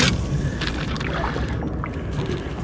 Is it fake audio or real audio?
real